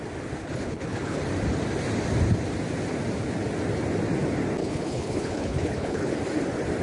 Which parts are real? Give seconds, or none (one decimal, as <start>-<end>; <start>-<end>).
0.0-0.4; 1.2-4.6; 6.1-6.8